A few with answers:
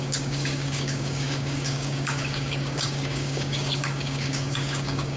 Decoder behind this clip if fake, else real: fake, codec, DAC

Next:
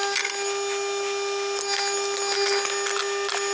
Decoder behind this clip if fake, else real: real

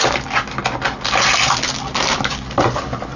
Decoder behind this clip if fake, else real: real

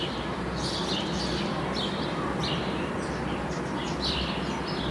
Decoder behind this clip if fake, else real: real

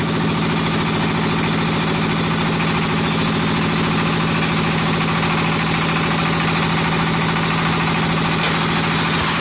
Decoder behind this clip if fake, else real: real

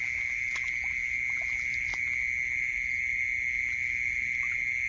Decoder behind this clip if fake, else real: real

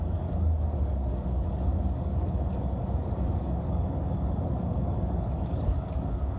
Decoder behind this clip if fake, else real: fake, codec, DAC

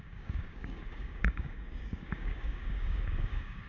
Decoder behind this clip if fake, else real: fake, codec, DAC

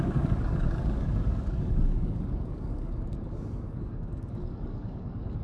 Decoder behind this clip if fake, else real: fake, codec, DAC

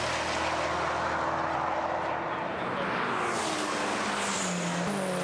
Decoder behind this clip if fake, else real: real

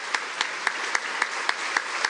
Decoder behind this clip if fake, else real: real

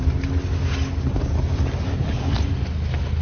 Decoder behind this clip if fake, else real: real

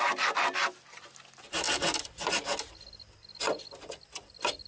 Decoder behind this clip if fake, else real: real